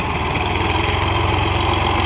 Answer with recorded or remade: recorded